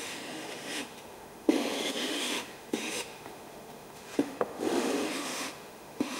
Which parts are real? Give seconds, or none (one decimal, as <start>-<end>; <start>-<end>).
none